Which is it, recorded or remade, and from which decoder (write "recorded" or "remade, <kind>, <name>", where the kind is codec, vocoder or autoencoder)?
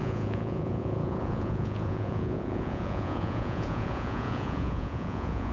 remade, vocoder, Vocos